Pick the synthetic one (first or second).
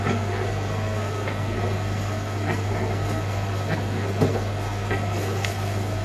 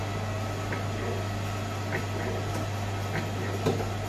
first